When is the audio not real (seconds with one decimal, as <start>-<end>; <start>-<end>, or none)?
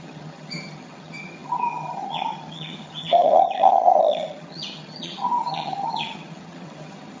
0.0-7.2